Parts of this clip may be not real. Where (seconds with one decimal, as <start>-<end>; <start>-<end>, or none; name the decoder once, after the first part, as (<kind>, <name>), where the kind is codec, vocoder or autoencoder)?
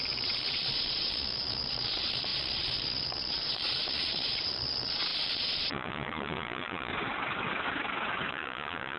0.0-6.9 (vocoder, Vocos); 8.3-9.0